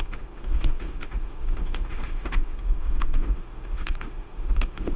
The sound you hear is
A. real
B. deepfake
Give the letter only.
B